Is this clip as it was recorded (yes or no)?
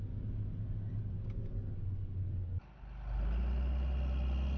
yes